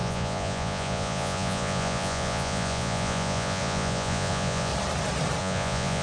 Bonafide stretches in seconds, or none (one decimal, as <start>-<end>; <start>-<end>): 4.7-5.4